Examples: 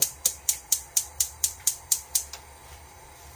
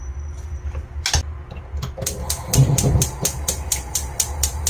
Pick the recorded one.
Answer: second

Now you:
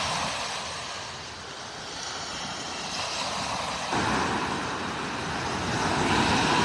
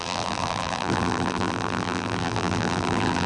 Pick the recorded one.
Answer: first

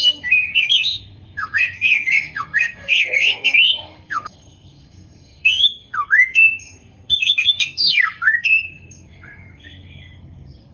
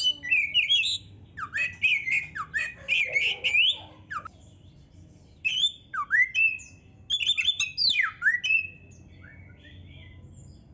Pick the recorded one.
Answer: second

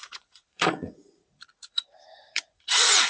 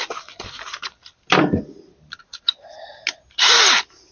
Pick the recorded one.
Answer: second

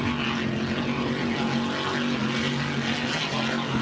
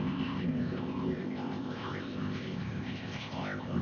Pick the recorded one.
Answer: first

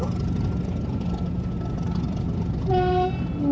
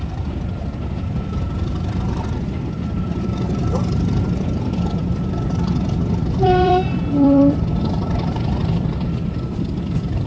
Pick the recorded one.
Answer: first